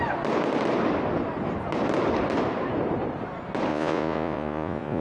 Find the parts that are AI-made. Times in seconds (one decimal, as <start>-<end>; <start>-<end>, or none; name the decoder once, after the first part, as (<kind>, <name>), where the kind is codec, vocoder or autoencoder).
3.7-5.0 (vocoder, Vocos)